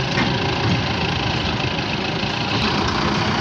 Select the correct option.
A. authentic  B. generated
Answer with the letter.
A